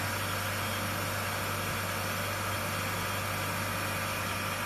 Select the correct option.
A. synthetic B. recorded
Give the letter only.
B